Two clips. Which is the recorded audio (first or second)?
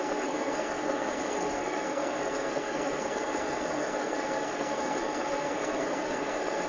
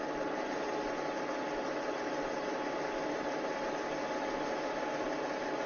second